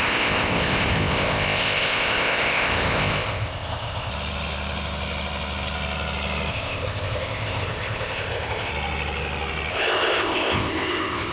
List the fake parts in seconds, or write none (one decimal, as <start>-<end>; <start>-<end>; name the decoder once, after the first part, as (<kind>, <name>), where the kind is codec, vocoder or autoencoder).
0.0-4.1 (codec, ZipCodec); 6.5-8.7; 9.7-11.3